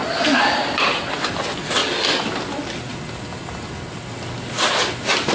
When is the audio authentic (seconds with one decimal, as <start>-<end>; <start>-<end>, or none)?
0.0-5.3